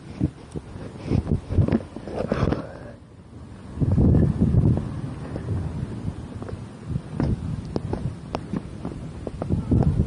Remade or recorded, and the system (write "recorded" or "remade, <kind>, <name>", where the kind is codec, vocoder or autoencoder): recorded